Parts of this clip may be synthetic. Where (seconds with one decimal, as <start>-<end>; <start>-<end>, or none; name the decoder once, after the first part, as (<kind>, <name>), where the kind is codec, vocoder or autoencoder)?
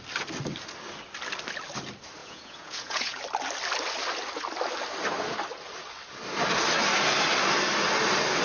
2.2-3.2 (vocoder, Vocos)